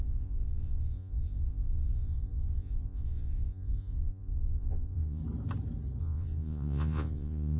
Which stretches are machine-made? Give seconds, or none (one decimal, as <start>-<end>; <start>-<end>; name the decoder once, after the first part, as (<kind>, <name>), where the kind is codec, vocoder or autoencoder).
0.0-5.2 (vocoder, Vocos); 6.0-7.6